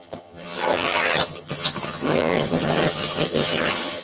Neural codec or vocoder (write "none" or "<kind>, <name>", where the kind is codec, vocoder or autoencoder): vocoder, HiFi-GAN